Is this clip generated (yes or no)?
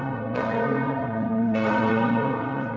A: yes